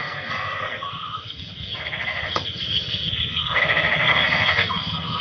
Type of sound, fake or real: fake